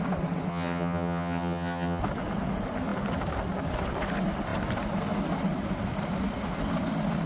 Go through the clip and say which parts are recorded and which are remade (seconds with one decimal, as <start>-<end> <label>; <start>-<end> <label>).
0.0-0.5 recorded; 0.5-2.0 remade; 2.0-7.3 recorded